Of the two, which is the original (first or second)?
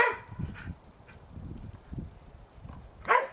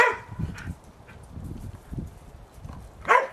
second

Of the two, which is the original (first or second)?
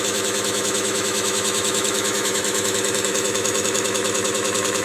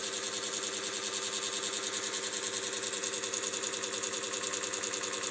second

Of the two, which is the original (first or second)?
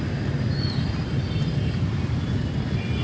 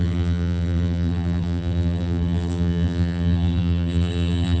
first